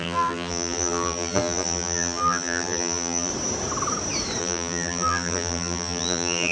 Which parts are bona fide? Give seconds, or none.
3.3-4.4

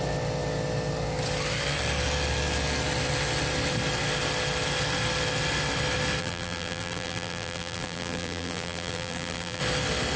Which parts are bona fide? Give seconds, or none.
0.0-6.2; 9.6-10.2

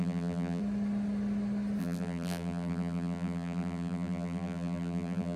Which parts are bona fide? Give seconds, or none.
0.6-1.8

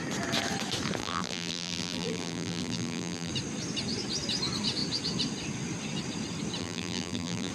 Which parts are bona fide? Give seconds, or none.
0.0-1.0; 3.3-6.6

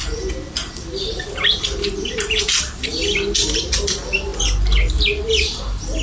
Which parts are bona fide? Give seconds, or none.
4.3-5.3

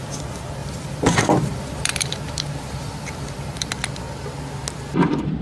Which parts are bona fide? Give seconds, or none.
0.0-0.6; 3.7-5.4